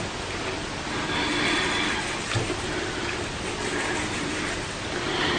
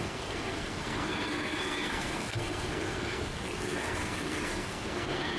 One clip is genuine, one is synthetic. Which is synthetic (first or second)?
second